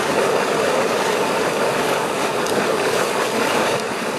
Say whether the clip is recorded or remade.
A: remade